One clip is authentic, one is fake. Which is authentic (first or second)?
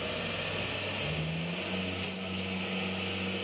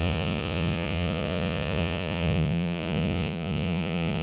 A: first